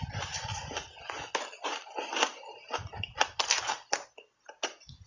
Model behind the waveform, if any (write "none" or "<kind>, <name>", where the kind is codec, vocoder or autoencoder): none